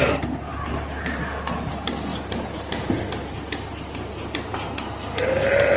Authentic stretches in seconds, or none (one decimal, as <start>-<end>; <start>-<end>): 0.0-2.1; 3.0-5.8